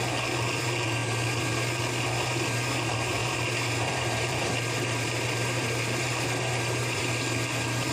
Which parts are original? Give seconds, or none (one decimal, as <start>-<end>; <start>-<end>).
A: 0.0-3.2; 7.0-7.9